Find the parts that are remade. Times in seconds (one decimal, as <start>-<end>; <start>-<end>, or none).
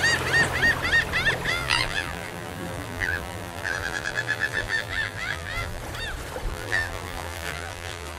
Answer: 1.5-5.8; 6.5-8.2